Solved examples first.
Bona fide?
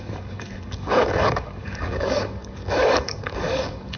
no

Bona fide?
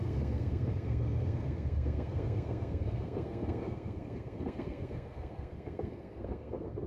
no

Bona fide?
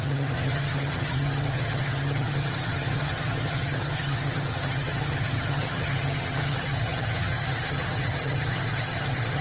no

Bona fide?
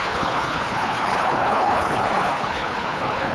no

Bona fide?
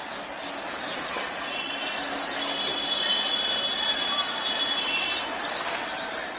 yes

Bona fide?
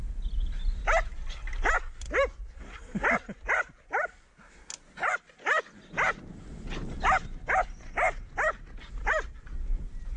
yes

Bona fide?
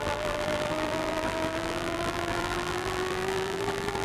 no